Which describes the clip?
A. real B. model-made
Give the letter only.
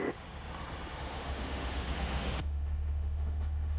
B